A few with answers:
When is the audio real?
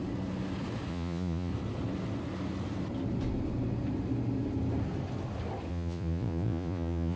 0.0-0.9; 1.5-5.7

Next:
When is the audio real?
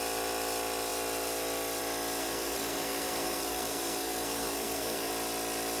0.0-2.2; 5.1-5.8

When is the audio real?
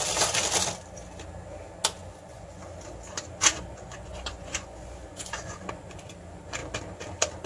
0.0-2.0; 2.6-3.4; 6.1-7.5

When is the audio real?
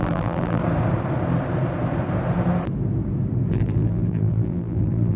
0.6-3.5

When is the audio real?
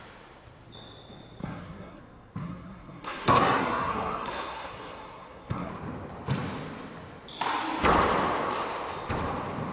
0.0-1.4; 2.0-2.4; 5.7-9.7